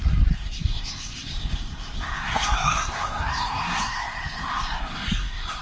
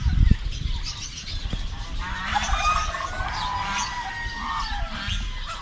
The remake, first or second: first